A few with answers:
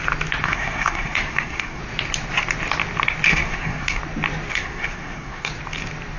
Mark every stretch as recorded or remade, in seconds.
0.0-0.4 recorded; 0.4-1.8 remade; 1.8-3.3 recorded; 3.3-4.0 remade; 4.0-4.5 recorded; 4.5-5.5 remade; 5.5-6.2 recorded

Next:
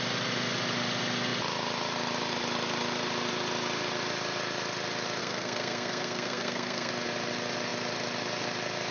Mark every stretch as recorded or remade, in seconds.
0.0-5.2 recorded; 5.2-6.9 remade; 6.9-8.9 recorded

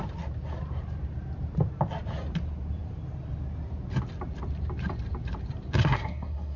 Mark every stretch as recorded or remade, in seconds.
0.0-5.8 recorded; 5.8-6.6 remade

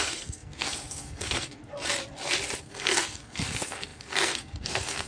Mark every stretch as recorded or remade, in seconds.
0.0-1.6 remade; 1.6-2.6 recorded; 2.6-5.1 remade

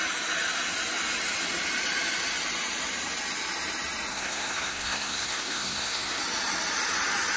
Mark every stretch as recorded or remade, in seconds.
0.0-4.1 recorded; 4.1-6.2 remade; 6.2-7.4 recorded

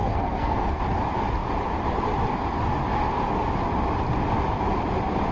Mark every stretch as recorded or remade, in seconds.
0.0-0.8 remade; 0.8-5.3 recorded

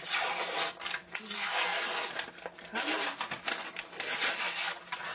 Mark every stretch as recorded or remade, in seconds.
0.0-5.1 recorded

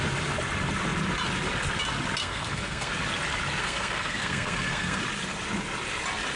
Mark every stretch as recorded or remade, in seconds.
0.0-2.2 recorded; 2.2-2.9 remade; 2.9-3.6 recorded; 3.6-5.0 remade; 5.0-6.4 recorded